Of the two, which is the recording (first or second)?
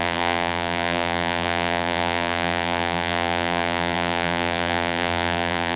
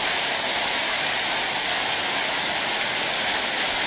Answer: second